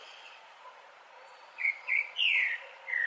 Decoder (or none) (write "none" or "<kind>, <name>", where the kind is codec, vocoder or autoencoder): vocoder, Vocos